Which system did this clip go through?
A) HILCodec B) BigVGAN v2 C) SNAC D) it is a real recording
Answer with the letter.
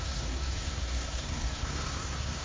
C